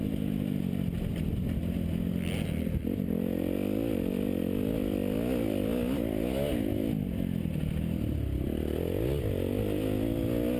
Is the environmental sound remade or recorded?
recorded